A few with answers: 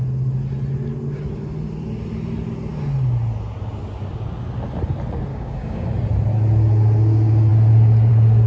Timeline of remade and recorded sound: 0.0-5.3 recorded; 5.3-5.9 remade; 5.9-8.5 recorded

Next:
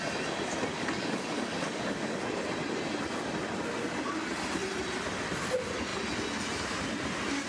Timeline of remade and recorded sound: 0.0-0.7 recorded; 0.7-2.2 remade; 2.2-7.5 recorded

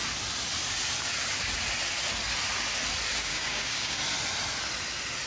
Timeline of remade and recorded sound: 0.0-3.2 recorded; 3.2-4.0 remade; 4.0-5.3 recorded